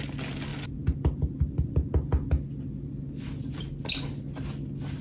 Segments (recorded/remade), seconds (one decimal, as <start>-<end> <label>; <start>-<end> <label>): 0.0-5.0 recorded